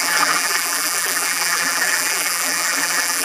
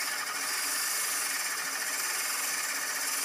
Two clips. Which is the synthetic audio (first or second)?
first